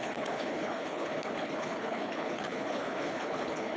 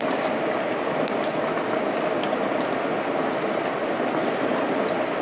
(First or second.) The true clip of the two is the second